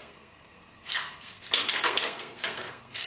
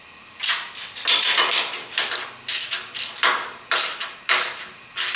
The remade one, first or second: first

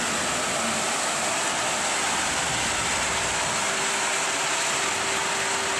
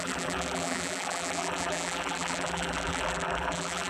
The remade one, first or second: second